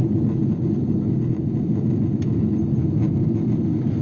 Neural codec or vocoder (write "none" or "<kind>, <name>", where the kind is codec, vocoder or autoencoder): none